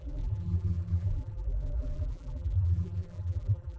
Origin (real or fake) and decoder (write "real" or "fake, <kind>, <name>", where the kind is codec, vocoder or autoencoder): fake, vocoder, BigVGAN v2